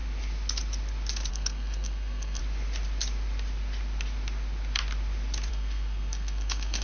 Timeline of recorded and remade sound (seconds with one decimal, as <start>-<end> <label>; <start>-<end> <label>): 0.0-1.3 recorded; 1.3-2.4 remade; 2.4-5.5 recorded; 5.5-6.8 remade